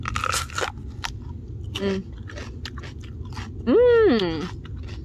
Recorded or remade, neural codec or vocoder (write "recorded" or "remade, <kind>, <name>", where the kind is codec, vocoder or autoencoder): recorded